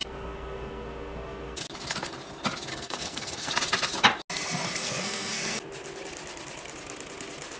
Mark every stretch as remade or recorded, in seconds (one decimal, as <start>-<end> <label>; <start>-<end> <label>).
0.0-1.6 remade; 1.6-2.7 recorded; 2.7-3.5 remade; 3.5-4.8 recorded; 4.8-5.6 remade; 5.6-7.6 recorded